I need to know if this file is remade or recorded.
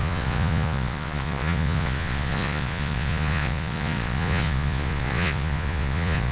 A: remade